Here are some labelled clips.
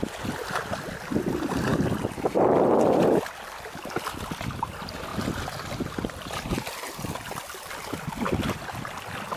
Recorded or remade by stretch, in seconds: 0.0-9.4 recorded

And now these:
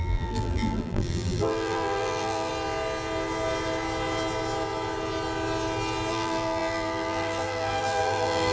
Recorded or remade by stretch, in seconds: 0.0-2.5 remade; 2.5-6.1 recorded; 6.1-8.5 remade